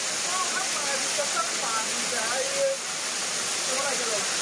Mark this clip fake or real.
real